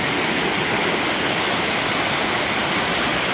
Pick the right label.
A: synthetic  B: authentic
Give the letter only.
B